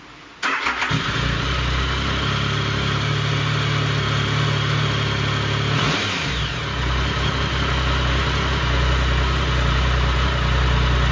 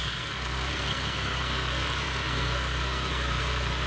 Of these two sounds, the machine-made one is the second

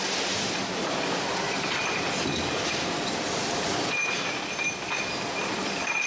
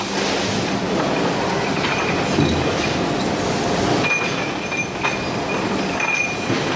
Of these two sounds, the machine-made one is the first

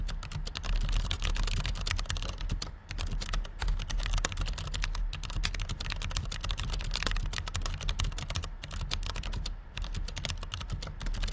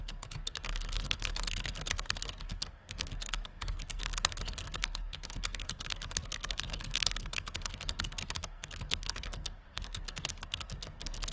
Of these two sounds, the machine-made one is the second